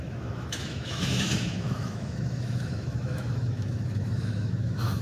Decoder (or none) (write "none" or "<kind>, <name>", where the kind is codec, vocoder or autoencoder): autoencoder, DAC-VAE